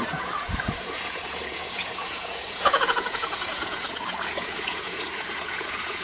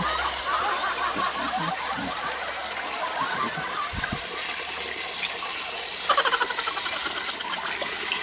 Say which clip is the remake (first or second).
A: first